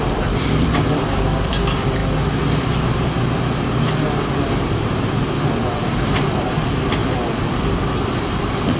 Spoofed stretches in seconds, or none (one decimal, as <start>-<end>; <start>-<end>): 0.0-2.0; 4.3-8.8